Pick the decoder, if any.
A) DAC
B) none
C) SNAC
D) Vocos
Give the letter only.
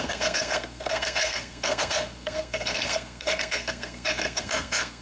C